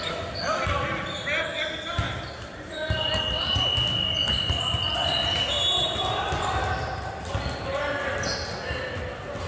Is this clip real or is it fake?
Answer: real